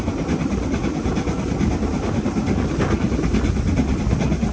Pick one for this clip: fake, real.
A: real